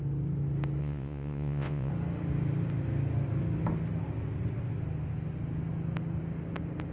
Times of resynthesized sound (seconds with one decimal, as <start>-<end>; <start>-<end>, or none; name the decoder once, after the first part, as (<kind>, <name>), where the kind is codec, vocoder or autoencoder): 0.8-1.9 (vocoder, Vocos)